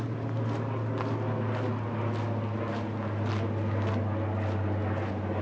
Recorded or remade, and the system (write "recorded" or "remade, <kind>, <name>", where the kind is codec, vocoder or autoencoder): recorded